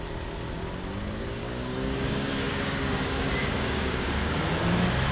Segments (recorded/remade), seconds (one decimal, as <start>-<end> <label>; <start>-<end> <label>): 0.0-1.4 recorded; 1.4-4.5 remade; 4.5-5.1 recorded